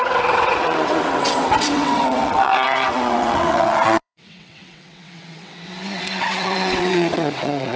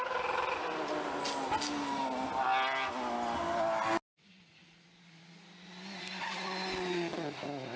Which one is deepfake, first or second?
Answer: first